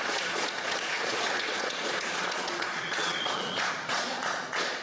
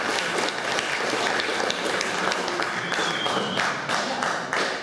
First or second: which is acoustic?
second